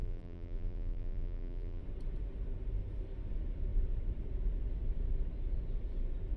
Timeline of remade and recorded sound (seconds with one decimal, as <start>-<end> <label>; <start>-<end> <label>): 0.0-1.8 remade; 1.8-6.4 recorded